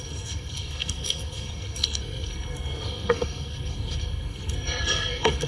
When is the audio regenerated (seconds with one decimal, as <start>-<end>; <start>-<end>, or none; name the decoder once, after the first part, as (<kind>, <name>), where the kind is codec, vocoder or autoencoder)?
0.0-5.5 (codec, SNAC)